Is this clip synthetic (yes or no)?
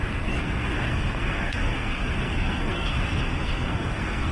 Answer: yes